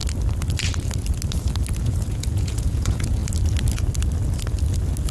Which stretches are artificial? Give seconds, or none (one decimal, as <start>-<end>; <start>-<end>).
1.8-3.2